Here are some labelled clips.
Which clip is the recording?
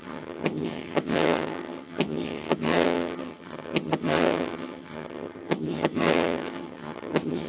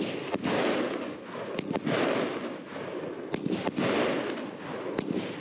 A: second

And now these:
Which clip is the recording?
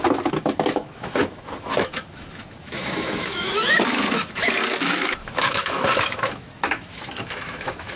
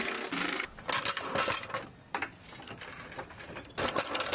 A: second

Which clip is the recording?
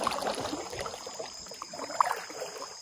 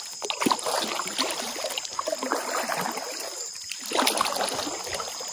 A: second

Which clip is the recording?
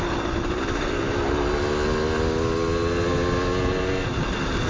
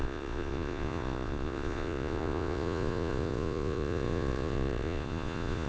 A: first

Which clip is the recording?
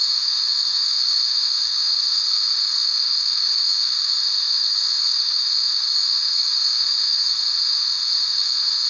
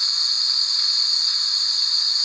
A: second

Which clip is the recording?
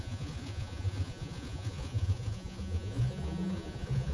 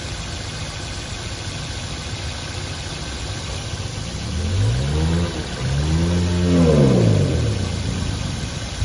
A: second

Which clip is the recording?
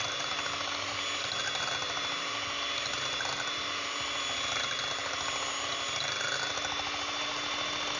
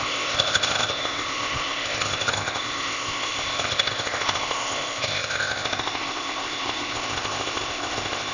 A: first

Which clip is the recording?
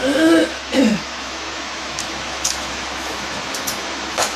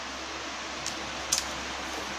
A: second